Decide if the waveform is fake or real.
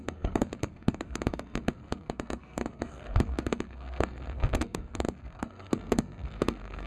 fake